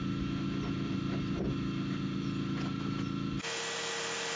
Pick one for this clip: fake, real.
real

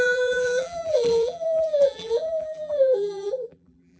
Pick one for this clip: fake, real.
fake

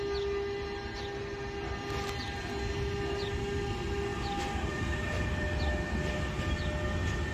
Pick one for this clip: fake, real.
real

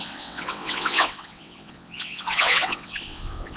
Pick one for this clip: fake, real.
fake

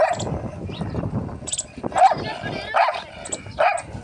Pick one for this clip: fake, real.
real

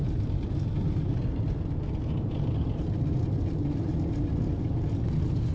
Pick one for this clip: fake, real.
real